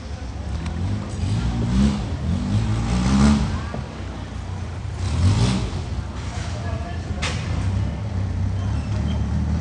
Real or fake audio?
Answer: real